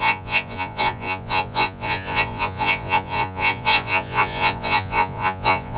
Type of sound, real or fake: fake